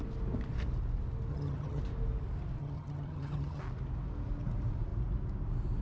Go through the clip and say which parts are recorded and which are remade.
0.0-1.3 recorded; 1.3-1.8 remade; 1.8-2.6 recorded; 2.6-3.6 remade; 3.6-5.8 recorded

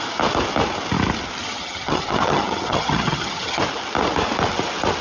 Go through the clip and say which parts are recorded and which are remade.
0.0-1.4 recorded; 1.4-3.6 remade; 3.6-5.0 recorded

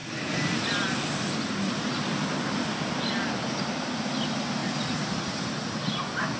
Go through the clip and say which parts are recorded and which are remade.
0.0-6.4 recorded

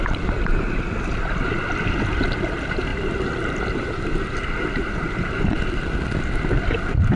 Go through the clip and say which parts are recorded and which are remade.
0.0-2.9 recorded; 2.9-5.4 remade; 5.4-7.2 recorded

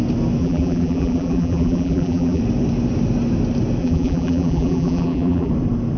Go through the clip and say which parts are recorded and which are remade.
0.0-0.4 recorded; 0.4-2.4 remade; 2.4-3.8 recorded; 3.8-5.5 remade; 5.5-6.0 recorded

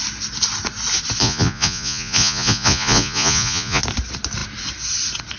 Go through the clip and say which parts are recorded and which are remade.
0.0-1.2 recorded; 1.2-3.8 remade; 3.8-5.4 recorded